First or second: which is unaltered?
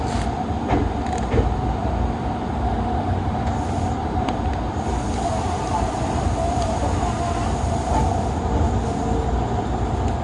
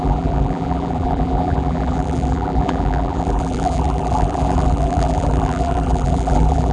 first